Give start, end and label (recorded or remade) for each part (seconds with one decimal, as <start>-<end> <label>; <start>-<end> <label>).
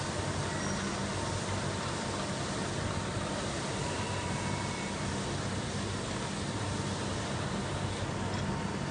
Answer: 0.0-8.9 recorded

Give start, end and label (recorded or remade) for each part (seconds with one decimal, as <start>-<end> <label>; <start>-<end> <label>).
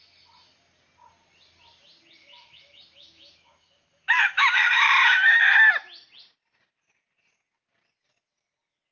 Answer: 0.0-2.2 recorded; 2.2-5.4 remade; 5.4-8.9 recorded